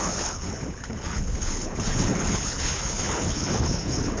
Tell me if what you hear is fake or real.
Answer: fake